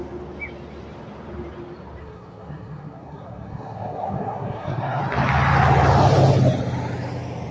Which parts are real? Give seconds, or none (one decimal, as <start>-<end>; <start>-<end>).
0.0-2.0; 5.0-7.5